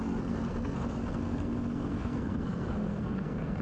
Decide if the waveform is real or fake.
fake